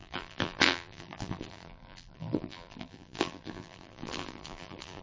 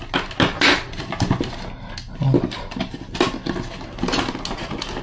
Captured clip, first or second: second